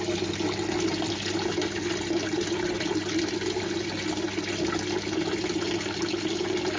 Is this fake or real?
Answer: real